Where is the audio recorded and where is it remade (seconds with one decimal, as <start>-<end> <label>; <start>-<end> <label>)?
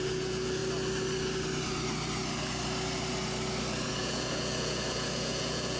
0.0-0.6 remade; 0.6-3.9 recorded; 3.9-5.8 remade